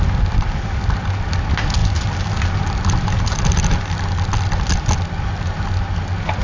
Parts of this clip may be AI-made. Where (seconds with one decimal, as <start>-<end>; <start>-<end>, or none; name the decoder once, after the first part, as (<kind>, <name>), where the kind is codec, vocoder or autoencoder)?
none